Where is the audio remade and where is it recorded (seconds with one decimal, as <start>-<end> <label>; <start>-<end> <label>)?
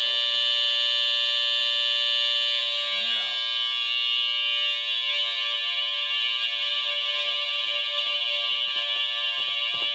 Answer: 0.0-9.9 recorded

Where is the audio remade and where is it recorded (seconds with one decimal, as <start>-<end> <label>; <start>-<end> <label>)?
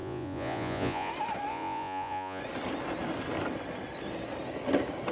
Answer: 0.0-1.1 remade; 1.1-1.5 recorded; 1.5-2.4 remade; 2.4-5.1 recorded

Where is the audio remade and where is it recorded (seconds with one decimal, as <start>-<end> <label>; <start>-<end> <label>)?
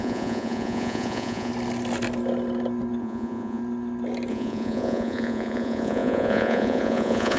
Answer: 0.0-1.5 remade; 1.5-3.0 recorded; 3.0-3.6 remade; 3.6-4.3 recorded; 4.3-7.4 remade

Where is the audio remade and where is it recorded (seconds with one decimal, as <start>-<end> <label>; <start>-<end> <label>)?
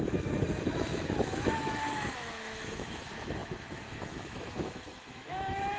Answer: 0.0-5.8 remade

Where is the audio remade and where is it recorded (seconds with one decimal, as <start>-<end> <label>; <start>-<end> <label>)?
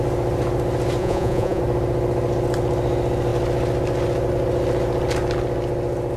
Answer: 0.0-1.0 recorded; 1.0-1.6 remade; 1.6-6.2 recorded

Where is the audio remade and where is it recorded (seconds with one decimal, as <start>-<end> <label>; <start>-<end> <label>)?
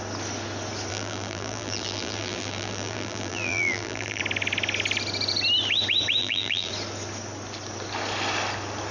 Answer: 0.0-0.9 recorded; 0.9-4.2 remade; 4.2-6.2 recorded; 6.2-6.7 remade; 6.7-8.9 recorded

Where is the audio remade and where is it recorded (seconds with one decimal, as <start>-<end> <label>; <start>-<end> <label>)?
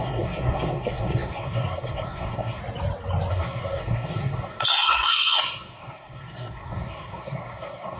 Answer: 0.0-2.6 remade; 2.6-3.3 recorded; 3.3-8.0 remade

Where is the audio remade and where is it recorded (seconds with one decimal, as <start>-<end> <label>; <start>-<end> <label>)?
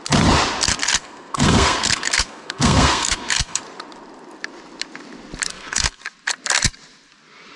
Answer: 0.0-1.0 recorded; 1.0-3.6 remade; 3.6-5.5 recorded; 5.5-6.0 remade; 6.0-7.6 recorded